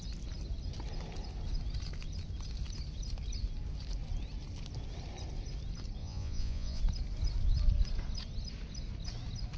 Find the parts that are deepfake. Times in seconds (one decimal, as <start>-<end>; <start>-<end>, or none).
6.0-6.8